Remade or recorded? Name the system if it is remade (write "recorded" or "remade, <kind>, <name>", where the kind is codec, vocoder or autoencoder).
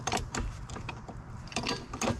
remade, vocoder, BigVGAN v2